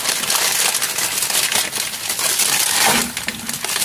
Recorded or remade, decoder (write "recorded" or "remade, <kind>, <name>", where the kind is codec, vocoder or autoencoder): recorded